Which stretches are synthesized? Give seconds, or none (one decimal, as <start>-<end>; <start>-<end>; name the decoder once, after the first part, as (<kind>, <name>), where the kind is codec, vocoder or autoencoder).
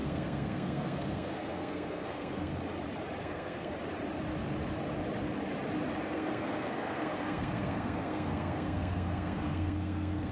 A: 0.0-2.5 (codec, SNAC); 3.2-3.7; 6.1-10.3